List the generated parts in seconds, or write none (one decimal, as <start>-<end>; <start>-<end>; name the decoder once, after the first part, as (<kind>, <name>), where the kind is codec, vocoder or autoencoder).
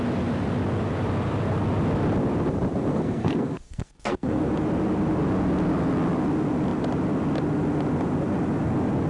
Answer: 2.9-4.4 (codec, SNAC)